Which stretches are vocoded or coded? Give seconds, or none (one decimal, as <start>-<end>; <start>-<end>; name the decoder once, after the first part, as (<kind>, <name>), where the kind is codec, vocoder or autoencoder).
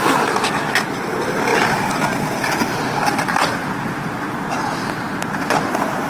none